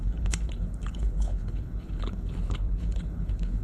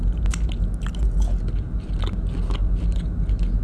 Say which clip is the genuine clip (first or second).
second